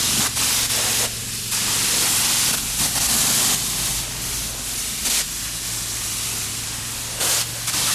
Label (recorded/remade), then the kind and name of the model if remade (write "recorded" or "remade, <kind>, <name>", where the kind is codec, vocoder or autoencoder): recorded